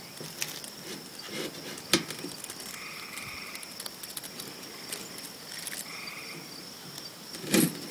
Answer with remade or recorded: recorded